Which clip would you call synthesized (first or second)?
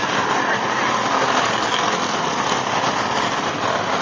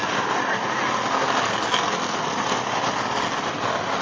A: first